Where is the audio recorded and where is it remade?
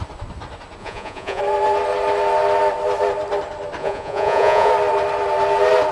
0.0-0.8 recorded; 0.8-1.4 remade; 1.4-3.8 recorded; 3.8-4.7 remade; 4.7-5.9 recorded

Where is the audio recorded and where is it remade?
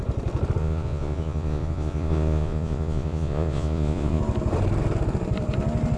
0.0-0.6 recorded; 0.6-4.2 remade; 4.2-6.0 recorded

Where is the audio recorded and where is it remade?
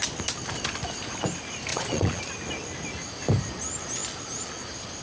0.0-1.7 recorded; 1.7-2.2 remade; 2.2-5.0 recorded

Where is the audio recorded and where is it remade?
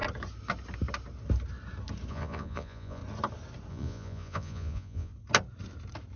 0.0-2.1 recorded; 2.1-3.0 remade; 3.0-3.7 recorded; 3.7-5.1 remade; 5.1-6.2 recorded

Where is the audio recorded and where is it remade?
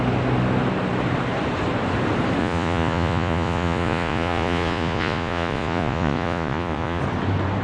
0.0-2.4 recorded; 2.4-7.0 remade; 7.0-7.6 recorded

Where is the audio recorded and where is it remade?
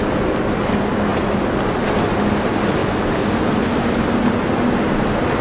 0.0-5.4 recorded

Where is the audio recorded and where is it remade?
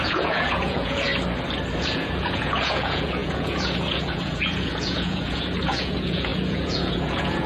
0.0-1.1 remade; 1.1-1.8 recorded; 1.8-7.5 remade